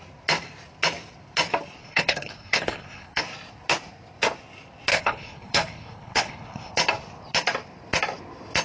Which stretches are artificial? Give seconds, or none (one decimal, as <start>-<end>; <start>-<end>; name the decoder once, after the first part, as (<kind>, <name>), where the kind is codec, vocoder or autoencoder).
1.8-3.2 (codec, HILCodec); 4.9-6.7

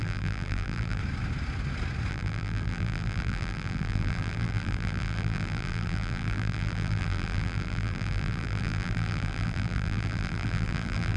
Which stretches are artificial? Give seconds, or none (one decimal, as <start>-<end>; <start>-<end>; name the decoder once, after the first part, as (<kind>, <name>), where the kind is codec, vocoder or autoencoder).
0.0-1.0 (vocoder, BigVGAN v2); 2.1-11.2